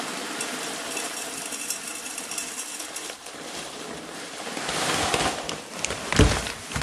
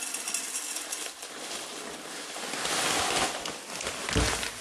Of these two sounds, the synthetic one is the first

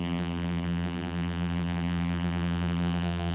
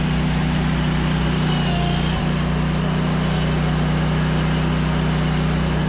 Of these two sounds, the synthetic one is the first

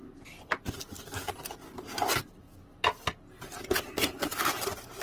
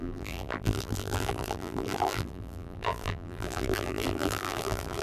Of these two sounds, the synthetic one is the second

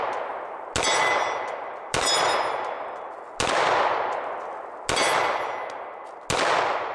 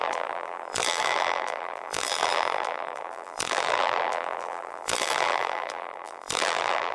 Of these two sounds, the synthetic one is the second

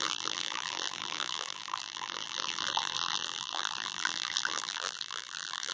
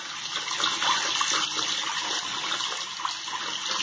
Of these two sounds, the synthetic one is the first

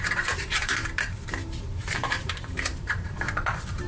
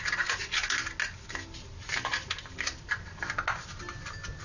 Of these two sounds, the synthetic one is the first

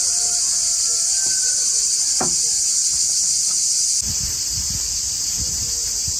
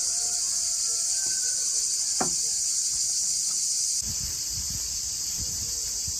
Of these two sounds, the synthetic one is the second